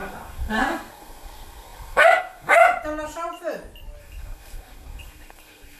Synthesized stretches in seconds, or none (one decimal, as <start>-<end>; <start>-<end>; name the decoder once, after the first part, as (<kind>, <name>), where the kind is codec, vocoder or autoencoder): 0.0-2.6 (codec, SNAC); 4.0-5.8

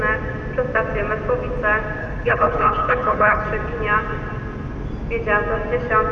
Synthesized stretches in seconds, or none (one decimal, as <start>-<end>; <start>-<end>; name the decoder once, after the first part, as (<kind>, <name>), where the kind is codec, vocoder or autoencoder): 2.0-3.4 (codec, HILCodec)

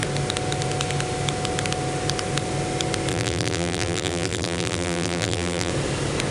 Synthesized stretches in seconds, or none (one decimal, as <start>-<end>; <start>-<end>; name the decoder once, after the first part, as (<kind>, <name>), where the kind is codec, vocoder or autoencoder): 3.1-5.7 (vocoder, BigVGAN v2)

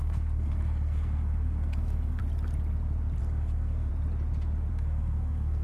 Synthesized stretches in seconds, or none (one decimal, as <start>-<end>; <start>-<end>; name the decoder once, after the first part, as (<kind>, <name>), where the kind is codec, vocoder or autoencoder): 0.0-2.2 (codec, SNAC); 3.2-3.9; 4.7-5.6